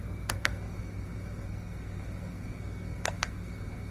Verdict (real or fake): fake